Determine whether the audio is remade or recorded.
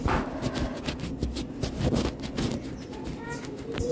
recorded